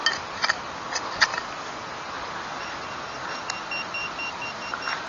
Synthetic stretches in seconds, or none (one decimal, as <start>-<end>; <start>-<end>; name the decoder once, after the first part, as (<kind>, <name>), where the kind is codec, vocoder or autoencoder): 1.3-3.4 (vocoder, BigVGAN v2); 4.0-5.1